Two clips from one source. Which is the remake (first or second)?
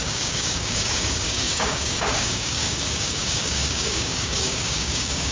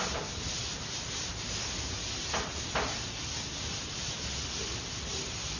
first